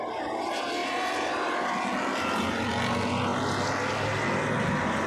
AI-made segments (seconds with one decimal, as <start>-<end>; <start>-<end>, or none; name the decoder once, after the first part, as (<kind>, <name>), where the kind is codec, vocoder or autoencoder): 0.8-1.7 (vocoder, BigVGAN v2); 2.1-2.7